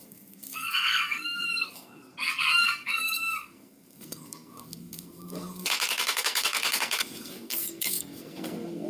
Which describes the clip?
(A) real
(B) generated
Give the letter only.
B